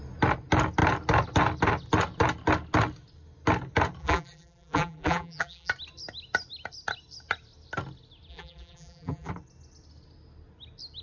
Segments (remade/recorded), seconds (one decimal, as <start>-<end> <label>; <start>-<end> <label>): 0.0-4.0 recorded; 4.0-5.7 remade; 5.7-8.3 recorded; 8.3-9.3 remade; 9.3-11.0 recorded